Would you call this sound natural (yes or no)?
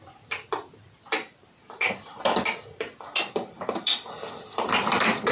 yes